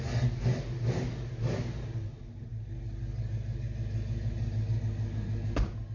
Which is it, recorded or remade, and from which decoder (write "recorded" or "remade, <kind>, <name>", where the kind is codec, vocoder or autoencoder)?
recorded